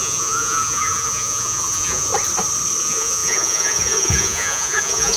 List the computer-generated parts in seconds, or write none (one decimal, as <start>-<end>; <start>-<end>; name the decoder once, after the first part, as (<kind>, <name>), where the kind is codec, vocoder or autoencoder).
0.0-2.1 (vocoder, Vocos); 2.8-5.2